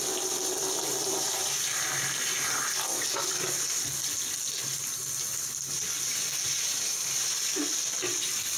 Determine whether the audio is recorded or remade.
recorded